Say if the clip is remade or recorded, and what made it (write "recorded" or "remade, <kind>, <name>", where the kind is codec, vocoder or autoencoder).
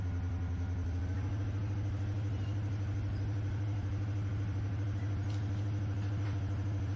recorded